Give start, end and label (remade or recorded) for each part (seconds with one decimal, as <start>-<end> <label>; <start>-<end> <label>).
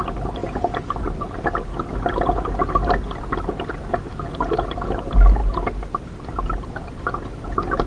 0.0-7.9 recorded